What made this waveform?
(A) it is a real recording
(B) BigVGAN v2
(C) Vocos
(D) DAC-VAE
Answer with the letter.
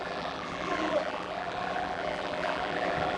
B